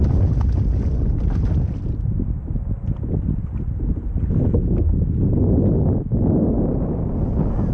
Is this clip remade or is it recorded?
recorded